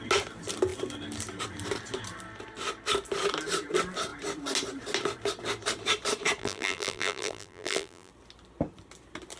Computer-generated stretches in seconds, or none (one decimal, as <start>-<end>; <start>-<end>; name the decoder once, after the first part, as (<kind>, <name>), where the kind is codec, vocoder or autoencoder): 6.4-8.1 (vocoder, BigVGAN v2)